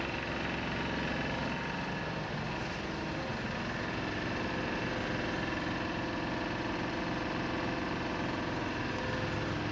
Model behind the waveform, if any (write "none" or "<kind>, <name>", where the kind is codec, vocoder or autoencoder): none